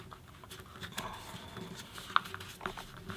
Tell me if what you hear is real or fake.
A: real